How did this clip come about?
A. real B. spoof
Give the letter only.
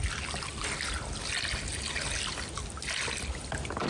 A